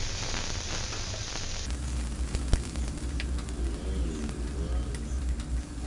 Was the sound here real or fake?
real